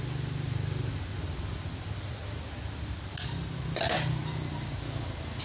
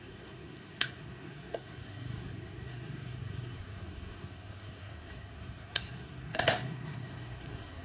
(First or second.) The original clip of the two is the first